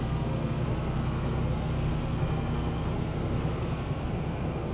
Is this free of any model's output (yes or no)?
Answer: no